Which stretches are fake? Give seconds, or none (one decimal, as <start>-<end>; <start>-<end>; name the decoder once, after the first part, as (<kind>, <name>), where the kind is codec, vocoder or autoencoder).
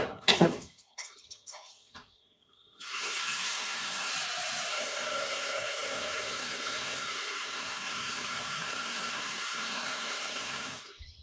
0.0-4.1 (codec, SNAC); 4.7-11.2